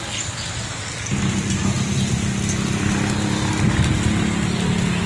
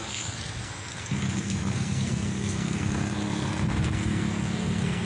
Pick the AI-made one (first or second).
second